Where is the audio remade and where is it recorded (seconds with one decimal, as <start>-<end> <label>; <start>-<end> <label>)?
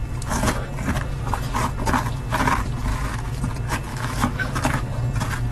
0.0-2.9 recorded; 2.9-3.4 remade; 3.4-3.9 recorded; 3.9-4.9 remade; 4.9-5.5 recorded